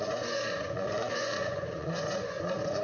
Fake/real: fake